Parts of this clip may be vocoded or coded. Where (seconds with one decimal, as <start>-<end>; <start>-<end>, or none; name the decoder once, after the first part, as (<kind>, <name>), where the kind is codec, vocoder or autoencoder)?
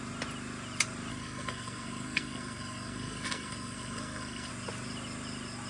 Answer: 1.1-4.5 (codec, SNAC)